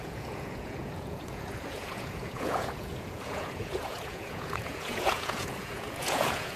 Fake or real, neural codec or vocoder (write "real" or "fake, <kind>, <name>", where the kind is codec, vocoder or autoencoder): fake, vocoder, Vocos